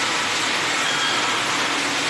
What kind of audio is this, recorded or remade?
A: recorded